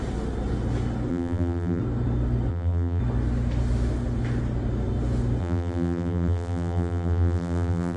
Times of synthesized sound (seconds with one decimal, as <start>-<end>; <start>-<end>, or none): 1.1-1.8; 2.5-3.0; 5.4-8.0